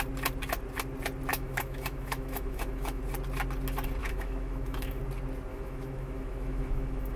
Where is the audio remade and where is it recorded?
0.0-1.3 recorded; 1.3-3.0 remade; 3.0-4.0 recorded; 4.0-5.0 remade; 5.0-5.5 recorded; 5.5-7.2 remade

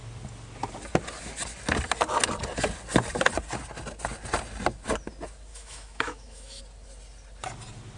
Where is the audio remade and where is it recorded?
0.0-5.5 recorded; 5.5-6.6 remade; 6.6-8.0 recorded

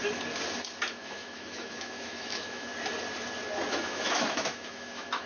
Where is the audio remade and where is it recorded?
0.0-0.9 recorded; 0.9-2.7 remade; 2.7-3.7 recorded; 3.7-5.3 remade

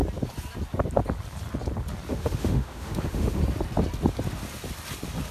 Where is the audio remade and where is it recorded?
0.0-2.1 recorded; 2.1-3.4 remade; 3.4-5.3 recorded

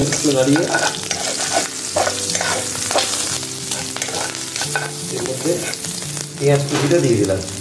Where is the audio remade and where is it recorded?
0.0-7.6 recorded

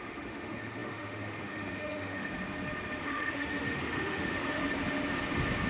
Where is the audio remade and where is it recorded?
0.0-2.3 remade; 2.3-3.0 recorded; 3.0-4.6 remade; 4.6-5.7 recorded

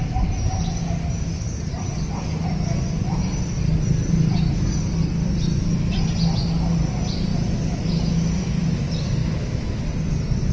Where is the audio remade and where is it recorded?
0.0-9.2 recorded; 9.2-9.8 remade; 9.8-10.5 recorded

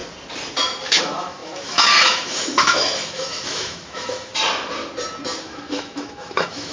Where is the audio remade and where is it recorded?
0.0-0.9 recorded; 0.9-4.3 remade; 4.3-5.4 recorded; 5.4-6.7 remade